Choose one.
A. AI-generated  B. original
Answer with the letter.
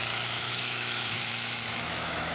A